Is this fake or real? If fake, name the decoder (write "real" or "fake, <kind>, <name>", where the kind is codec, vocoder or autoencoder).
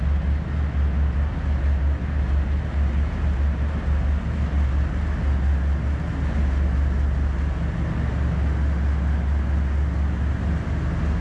real